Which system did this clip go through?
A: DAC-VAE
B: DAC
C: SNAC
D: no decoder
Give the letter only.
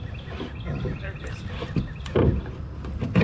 D